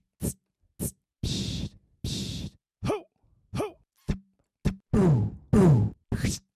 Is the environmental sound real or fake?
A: real